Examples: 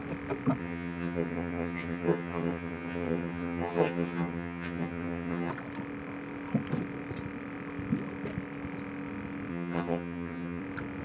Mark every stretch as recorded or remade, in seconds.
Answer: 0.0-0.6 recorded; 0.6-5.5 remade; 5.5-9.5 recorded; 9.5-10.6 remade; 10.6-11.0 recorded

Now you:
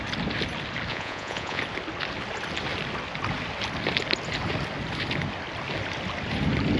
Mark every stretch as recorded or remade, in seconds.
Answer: 0.0-0.9 recorded; 0.9-1.6 remade; 1.6-6.8 recorded

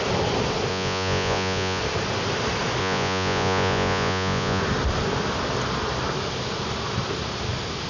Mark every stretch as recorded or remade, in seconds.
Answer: 0.0-0.7 recorded; 0.7-1.8 remade; 1.8-2.8 recorded; 2.8-4.6 remade; 4.6-7.9 recorded

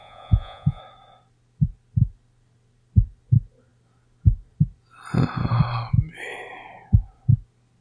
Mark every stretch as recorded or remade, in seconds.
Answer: 0.0-0.8 remade; 0.8-7.8 recorded

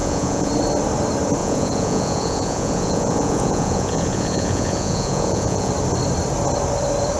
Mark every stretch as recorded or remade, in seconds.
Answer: 0.0-0.5 remade; 0.5-1.4 recorded; 1.4-5.7 remade; 5.7-7.2 recorded